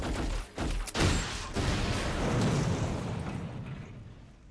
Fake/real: real